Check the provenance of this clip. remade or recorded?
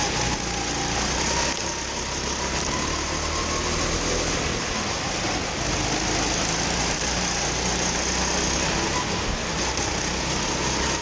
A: recorded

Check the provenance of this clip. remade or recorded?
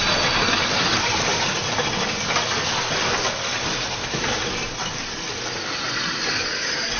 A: recorded